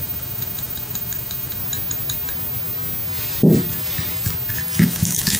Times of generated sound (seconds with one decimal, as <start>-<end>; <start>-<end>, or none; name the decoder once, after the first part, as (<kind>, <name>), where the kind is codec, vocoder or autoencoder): 0.0-1.6 (autoencoder, DAC-VAE); 4.8-5.4